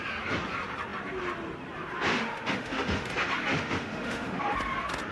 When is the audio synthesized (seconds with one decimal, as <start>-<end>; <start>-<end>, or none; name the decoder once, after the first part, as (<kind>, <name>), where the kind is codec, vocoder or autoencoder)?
2.1-3.1 (autoencoder, DAC-VAE); 3.5-4.4